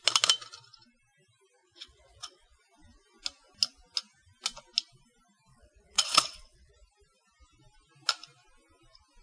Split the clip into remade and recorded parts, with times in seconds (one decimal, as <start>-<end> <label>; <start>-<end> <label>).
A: 0.0-1.6 recorded; 1.6-2.6 remade; 2.6-5.5 recorded; 5.5-6.7 remade; 6.7-9.2 recorded